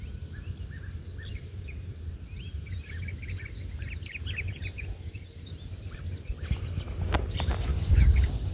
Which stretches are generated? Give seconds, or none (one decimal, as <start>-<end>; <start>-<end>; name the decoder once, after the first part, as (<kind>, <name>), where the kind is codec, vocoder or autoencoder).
7.7-8.5 (codec, DAC)